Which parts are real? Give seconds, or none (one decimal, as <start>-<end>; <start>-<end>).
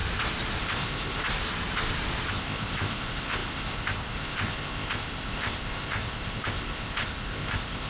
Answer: 0.0-0.6; 1.2-2.3